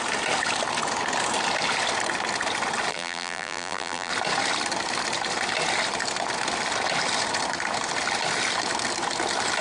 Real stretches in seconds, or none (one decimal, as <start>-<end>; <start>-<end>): 0.0-2.9; 4.1-9.6